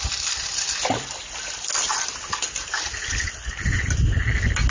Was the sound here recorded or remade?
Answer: recorded